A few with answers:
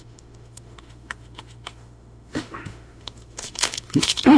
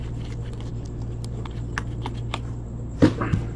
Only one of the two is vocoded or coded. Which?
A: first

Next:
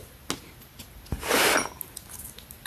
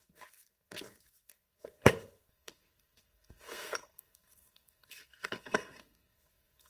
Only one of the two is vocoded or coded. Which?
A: second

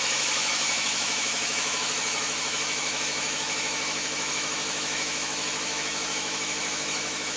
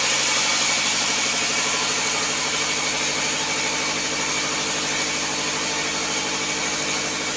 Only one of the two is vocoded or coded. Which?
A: first